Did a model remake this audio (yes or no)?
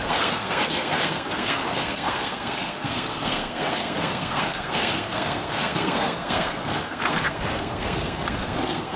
yes